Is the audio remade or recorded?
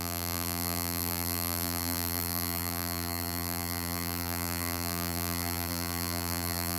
remade